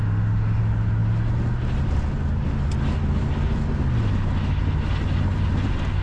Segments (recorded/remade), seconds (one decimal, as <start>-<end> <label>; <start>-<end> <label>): 0.0-0.6 remade; 0.6-6.0 recorded